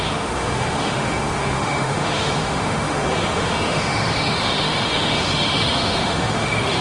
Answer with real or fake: fake